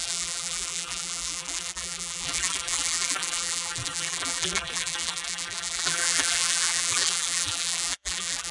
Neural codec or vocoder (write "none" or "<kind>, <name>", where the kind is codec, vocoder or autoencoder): vocoder, BigVGAN v2